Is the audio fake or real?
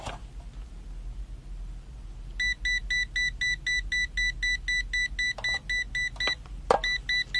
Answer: real